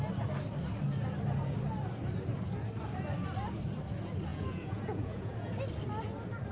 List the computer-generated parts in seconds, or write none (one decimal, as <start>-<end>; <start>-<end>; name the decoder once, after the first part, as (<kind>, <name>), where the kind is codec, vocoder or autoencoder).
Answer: 4.3-5.6 (vocoder, Vocos)

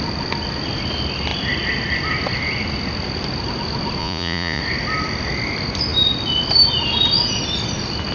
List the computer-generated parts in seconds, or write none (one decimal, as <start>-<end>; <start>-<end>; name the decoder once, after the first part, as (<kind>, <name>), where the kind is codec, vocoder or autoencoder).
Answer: 4.0-4.6 (vocoder, Vocos)

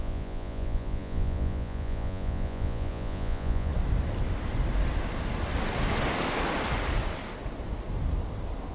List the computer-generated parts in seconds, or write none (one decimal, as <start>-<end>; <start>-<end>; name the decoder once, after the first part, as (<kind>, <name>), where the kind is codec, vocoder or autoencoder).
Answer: 0.0-3.7 (vocoder, Vocos)